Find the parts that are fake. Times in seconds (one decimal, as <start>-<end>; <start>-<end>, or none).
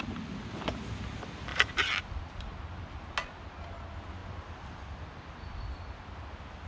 1.5-2.6